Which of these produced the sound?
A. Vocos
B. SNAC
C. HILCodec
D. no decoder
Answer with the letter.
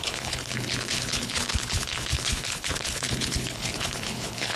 C